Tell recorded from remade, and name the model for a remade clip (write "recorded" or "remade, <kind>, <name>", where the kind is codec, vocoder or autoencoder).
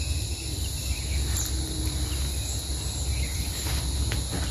recorded